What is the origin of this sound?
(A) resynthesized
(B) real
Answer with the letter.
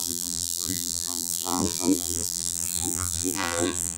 A